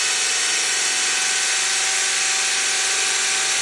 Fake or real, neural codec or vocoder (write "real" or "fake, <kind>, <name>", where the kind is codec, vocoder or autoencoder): real